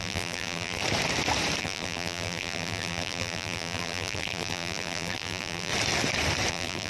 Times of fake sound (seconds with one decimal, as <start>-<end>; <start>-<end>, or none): 0.0-0.8; 1.6-5.7; 6.5-6.9